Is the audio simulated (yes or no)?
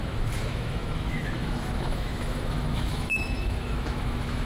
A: yes